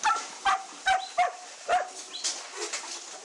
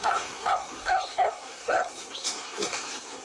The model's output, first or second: second